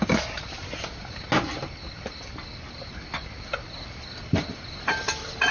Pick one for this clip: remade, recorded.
recorded